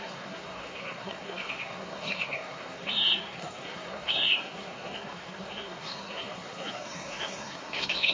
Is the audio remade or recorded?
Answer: remade